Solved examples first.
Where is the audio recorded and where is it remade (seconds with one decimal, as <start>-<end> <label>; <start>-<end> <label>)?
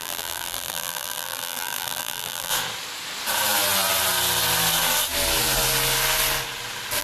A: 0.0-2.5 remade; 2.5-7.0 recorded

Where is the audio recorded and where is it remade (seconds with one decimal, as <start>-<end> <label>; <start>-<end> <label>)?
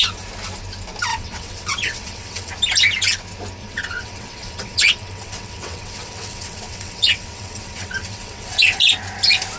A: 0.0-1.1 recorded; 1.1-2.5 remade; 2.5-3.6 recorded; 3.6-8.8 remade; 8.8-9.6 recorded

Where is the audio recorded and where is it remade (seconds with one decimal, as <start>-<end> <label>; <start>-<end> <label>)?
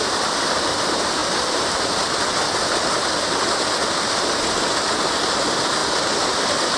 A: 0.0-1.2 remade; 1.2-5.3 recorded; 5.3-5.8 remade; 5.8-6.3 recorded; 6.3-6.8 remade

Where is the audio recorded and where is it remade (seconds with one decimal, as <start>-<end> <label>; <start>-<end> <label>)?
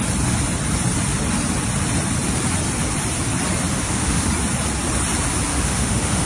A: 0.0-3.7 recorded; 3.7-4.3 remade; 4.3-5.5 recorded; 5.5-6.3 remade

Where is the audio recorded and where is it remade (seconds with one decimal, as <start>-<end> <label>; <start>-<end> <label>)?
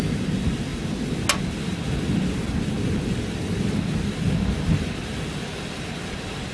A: 0.0-6.5 recorded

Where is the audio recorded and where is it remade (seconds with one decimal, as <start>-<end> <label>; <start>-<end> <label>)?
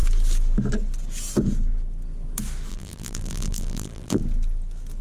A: 0.0-2.7 recorded; 2.7-4.2 remade; 4.2-5.0 recorded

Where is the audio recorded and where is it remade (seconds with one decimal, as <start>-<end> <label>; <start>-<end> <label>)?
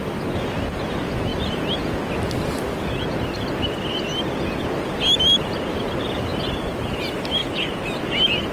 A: 0.0-8.5 recorded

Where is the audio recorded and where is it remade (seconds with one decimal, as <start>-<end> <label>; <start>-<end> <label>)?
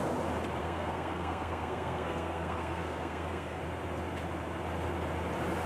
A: 0.0-0.6 recorded; 0.6-3.6 remade; 3.6-5.7 recorded